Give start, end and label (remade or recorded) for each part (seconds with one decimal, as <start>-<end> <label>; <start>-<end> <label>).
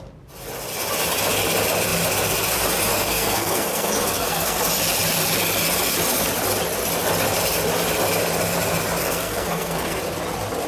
0.0-2.9 recorded; 2.9-4.6 remade; 4.6-9.0 recorded; 9.0-10.0 remade; 10.0-10.7 recorded